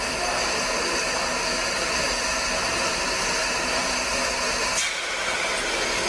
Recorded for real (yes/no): yes